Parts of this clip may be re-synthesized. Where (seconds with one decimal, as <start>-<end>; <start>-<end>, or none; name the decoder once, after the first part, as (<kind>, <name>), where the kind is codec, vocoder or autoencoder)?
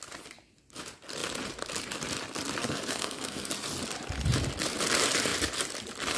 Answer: 2.6-3.5 (codec, SNAC)